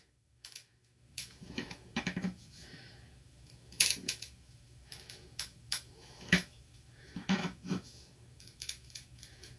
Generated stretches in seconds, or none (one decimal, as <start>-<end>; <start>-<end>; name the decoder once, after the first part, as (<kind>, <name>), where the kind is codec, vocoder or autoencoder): 0.0-9.6 (autoencoder, DAC-VAE)